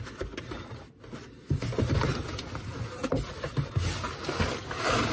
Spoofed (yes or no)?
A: no